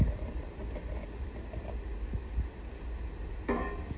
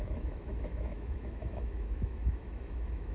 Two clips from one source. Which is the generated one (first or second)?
second